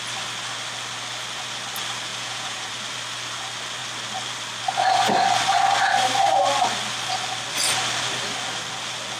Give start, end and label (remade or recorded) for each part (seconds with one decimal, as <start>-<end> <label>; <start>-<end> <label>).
0.0-2.1 recorded; 2.1-2.7 remade; 2.7-9.2 recorded